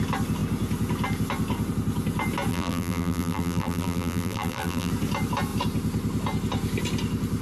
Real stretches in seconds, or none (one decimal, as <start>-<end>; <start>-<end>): 0.0-2.5; 4.9-7.4